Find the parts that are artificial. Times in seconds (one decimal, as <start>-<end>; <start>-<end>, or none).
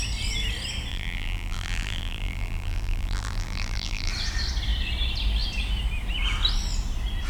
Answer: 0.9-4.1